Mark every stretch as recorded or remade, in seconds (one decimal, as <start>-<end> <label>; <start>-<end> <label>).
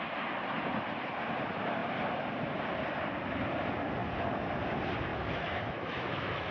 0.0-5.1 recorded; 5.1-6.5 remade